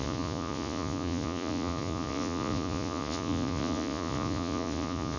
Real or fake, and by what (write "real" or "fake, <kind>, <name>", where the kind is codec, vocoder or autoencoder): fake, vocoder, Vocos